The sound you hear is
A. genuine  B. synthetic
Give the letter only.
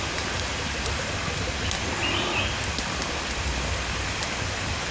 A